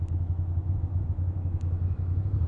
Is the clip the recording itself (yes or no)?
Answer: no